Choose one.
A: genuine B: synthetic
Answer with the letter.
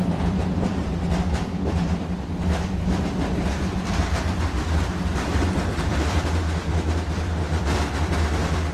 B